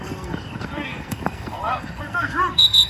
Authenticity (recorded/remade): remade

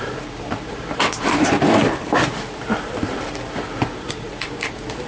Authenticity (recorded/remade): remade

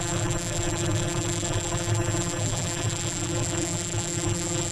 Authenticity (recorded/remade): remade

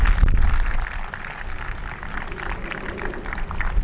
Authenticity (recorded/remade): recorded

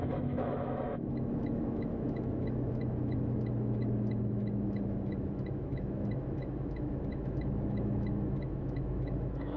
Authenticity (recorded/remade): remade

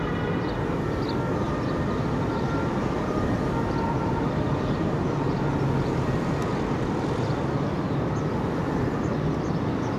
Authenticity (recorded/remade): remade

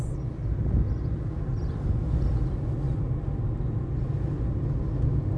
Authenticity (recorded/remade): recorded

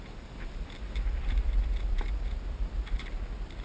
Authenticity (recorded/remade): recorded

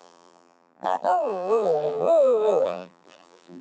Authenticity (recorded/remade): remade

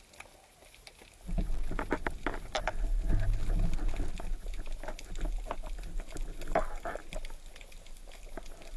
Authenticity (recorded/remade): recorded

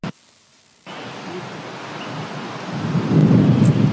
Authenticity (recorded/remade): recorded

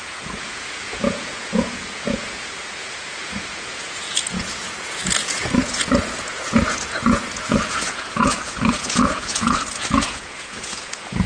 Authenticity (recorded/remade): remade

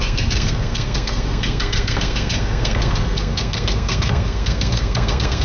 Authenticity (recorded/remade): remade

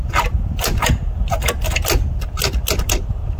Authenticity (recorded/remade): recorded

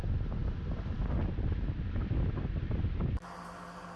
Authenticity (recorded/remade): recorded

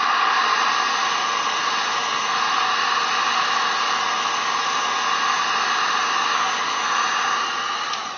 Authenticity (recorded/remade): recorded